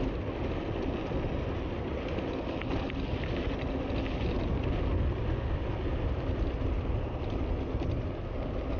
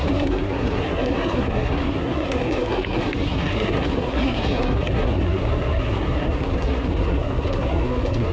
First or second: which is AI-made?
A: second